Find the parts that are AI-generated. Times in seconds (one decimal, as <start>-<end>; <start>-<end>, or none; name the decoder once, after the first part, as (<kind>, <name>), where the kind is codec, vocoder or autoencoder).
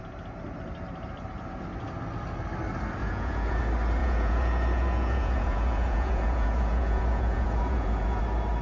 3.0-3.6 (vocoder, Vocos); 4.0-8.2